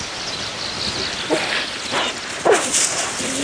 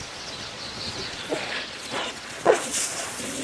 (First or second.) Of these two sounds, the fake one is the second